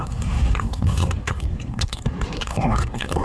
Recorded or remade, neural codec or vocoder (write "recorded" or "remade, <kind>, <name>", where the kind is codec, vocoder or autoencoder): remade, codec, SNAC